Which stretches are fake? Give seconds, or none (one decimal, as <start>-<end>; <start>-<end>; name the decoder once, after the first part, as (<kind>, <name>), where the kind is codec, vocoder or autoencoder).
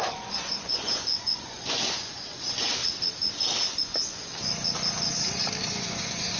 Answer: 0.0-2.8 (vocoder, Vocos); 3.8-4.3; 5.6-6.4